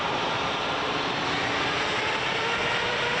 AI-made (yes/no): yes